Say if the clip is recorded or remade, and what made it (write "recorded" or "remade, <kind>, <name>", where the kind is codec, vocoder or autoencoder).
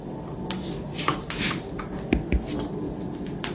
recorded